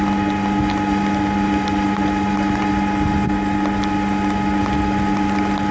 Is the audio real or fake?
real